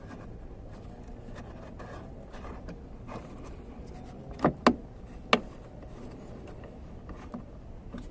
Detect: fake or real real